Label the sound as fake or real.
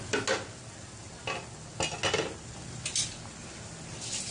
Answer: real